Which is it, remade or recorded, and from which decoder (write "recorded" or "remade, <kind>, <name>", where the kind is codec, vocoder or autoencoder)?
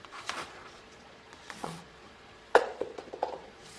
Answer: remade, vocoder, Vocos